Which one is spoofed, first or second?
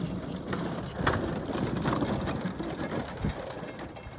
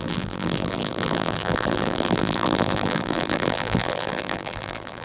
second